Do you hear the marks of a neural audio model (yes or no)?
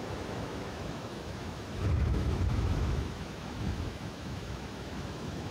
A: yes